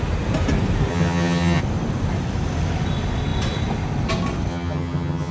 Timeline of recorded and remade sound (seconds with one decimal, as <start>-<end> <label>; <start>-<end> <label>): 0.0-0.9 recorded; 0.9-1.6 remade; 1.6-4.5 recorded; 4.5-5.3 remade